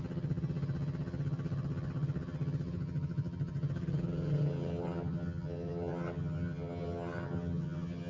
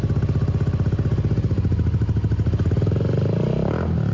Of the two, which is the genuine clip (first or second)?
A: second